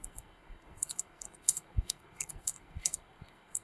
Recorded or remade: remade